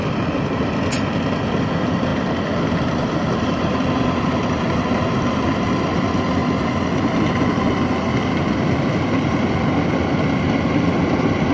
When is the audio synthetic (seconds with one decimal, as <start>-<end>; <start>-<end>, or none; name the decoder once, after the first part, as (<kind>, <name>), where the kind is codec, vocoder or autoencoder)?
2.1-4.6 (vocoder, BigVGAN v2); 6.4-7.1